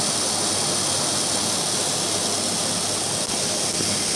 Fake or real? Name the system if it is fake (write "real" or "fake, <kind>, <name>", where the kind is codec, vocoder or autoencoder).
real